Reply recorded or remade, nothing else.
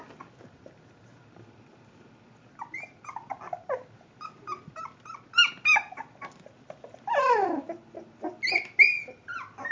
recorded